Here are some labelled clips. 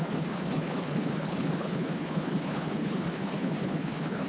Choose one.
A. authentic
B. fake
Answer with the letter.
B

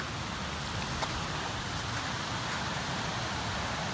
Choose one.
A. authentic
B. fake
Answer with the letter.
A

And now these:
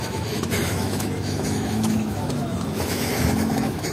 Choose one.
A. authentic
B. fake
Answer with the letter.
B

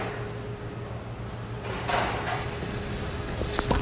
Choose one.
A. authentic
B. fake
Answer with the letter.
A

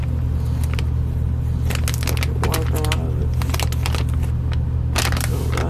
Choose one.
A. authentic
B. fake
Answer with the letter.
A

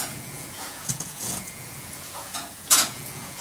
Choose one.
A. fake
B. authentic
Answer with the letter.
A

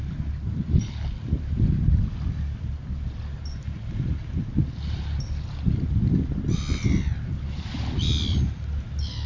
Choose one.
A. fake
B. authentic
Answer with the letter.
B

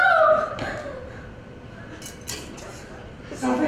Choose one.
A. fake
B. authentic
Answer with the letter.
B